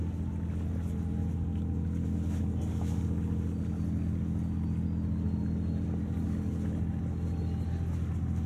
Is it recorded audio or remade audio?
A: recorded